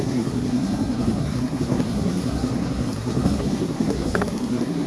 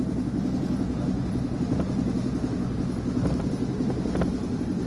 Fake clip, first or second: first